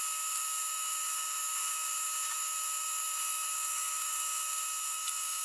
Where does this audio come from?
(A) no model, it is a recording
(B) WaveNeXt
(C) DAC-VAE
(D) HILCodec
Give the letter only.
C